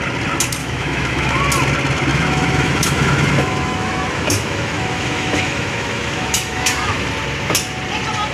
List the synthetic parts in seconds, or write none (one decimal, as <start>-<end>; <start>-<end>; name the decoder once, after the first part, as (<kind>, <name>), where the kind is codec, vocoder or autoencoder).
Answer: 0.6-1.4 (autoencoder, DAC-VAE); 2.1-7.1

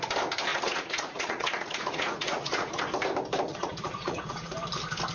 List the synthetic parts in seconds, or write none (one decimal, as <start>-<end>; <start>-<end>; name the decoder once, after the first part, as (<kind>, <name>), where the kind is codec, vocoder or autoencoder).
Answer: 0.5-2.8 (vocoder, Vocos); 3.5-4.5

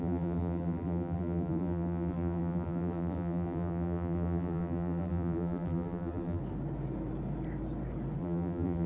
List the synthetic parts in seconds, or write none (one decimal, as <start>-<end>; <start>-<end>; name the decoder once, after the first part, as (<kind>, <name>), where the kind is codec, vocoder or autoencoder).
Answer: 0.0-6.4 (vocoder, BigVGAN v2); 8.2-8.9

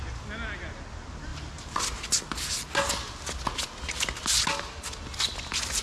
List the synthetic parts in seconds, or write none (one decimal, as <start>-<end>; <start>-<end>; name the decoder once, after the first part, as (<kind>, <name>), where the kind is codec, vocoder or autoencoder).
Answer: none

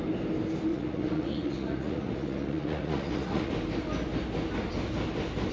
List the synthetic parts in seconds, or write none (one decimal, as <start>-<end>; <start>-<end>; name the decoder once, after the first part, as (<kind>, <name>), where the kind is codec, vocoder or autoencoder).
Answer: 0.7-3.5 (vocoder, Vocos)

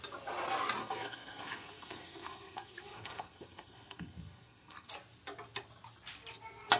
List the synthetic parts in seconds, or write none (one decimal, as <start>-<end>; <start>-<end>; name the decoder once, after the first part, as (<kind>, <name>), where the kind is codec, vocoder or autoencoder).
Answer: 0.8-4.9 (codec, SNAC)

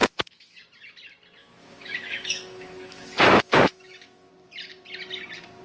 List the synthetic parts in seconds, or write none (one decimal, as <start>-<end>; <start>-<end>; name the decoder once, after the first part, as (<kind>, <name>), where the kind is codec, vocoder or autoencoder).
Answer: 0.0-0.6 (autoencoder, DAC-VAE); 1.4-4.3